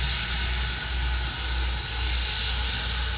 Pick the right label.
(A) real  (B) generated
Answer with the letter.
A